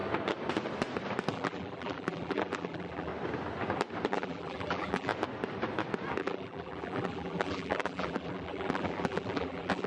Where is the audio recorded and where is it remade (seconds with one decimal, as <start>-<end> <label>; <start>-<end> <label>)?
0.0-1.3 recorded; 1.3-3.1 remade; 3.1-4.1 recorded; 4.1-5.1 remade; 5.1-6.2 recorded; 6.2-9.9 remade